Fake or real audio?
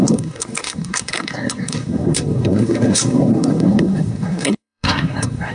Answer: fake